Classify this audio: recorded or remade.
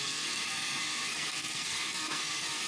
remade